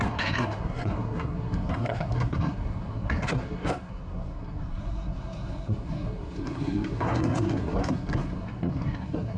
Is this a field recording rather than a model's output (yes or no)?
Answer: no